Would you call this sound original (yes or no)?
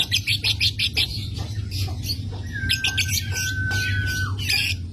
yes